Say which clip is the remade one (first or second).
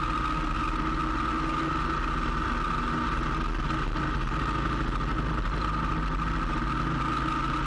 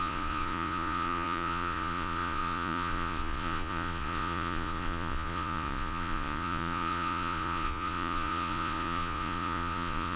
second